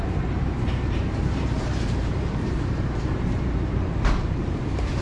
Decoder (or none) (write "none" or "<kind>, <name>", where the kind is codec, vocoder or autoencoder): vocoder, BigVGAN v2